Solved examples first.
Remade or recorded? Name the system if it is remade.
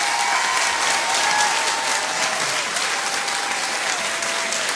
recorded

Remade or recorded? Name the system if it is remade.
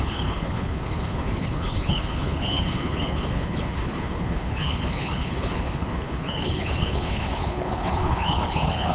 remade, codec, HILCodec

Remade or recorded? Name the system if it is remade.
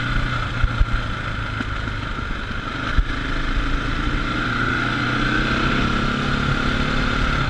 recorded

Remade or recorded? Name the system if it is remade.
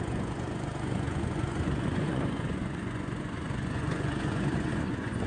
remade, vocoder, Vocos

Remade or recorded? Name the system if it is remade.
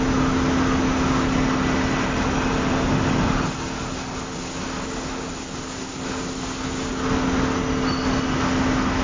recorded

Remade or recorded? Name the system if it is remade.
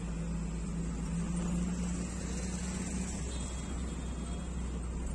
recorded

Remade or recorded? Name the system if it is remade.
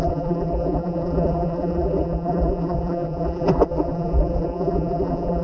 remade, vocoder, BigVGAN v2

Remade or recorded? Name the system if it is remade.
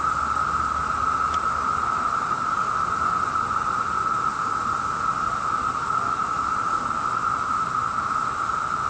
recorded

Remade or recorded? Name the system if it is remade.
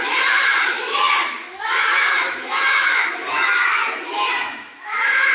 remade, autoencoder, DAC-VAE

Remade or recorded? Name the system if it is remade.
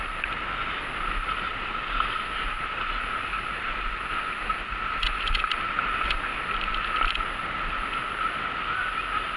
recorded